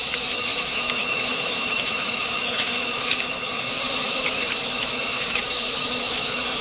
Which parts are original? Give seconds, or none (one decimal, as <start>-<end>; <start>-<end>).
none